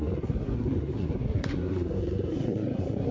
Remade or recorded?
remade